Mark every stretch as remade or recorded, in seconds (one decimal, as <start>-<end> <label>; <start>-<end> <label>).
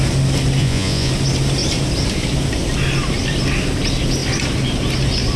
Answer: 0.0-0.6 recorded; 0.6-1.1 remade; 1.1-5.4 recorded